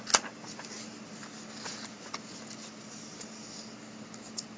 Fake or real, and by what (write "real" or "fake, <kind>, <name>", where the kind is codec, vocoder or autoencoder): real